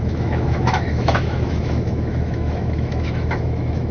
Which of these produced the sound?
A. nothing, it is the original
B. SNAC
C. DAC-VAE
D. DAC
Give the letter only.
C